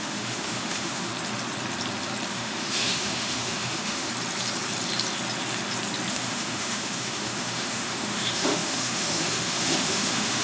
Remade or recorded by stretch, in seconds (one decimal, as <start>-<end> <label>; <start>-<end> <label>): 0.0-1.1 remade; 1.1-2.3 recorded; 2.3-4.1 remade; 4.1-6.1 recorded; 6.1-10.4 remade